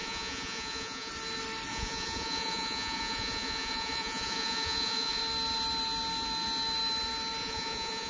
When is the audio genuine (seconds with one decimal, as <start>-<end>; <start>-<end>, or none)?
1.1-1.7; 5.2-7.4